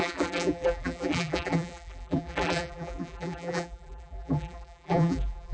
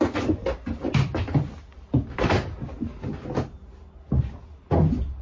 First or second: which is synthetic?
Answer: first